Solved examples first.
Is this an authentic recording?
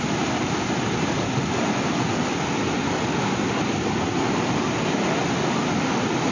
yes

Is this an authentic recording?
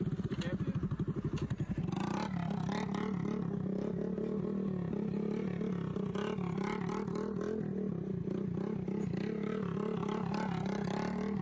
yes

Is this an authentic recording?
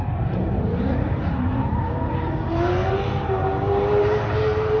no